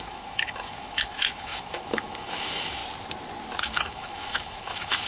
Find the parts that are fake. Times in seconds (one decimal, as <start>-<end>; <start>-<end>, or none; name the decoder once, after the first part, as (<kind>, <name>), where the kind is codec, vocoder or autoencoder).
0.0-2.8 (autoencoder, DAC-VAE); 3.6-5.1